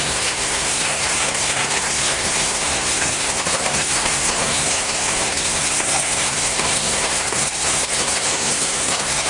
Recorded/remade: remade